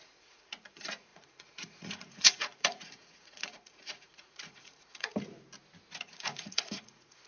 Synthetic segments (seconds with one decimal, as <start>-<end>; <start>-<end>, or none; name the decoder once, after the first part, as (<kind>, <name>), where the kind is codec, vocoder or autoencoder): 0.0-5.1 (vocoder, Vocos); 6.0-7.3